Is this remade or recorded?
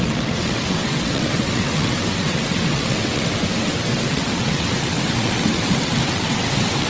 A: remade